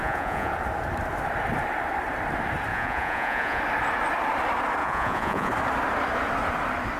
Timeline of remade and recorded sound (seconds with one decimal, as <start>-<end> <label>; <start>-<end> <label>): 0.0-0.5 remade; 0.5-2.7 recorded; 2.7-3.6 remade; 3.6-4.8 recorded; 4.8-5.5 remade; 5.5-7.0 recorded